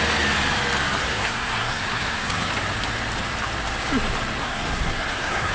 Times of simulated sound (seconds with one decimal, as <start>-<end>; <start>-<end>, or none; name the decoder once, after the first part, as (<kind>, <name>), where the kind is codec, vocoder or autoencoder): 1.0-2.5 (codec, SNAC); 4.4-5.5